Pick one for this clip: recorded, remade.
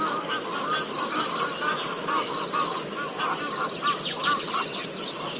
remade